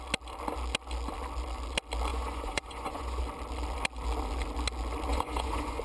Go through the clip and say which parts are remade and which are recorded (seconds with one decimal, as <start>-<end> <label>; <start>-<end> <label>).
0.0-2.1 recorded; 2.1-3.2 remade; 3.2-5.1 recorded; 5.1-5.8 remade